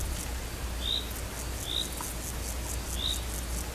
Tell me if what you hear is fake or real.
real